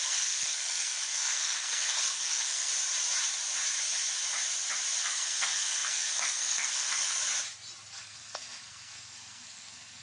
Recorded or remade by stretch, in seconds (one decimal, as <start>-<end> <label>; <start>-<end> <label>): 0.0-2.7 remade; 2.7-5.0 recorded; 5.0-7.2 remade; 7.2-7.9 recorded; 7.9-10.0 remade